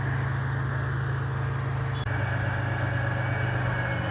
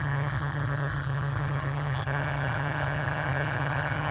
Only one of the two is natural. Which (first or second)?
first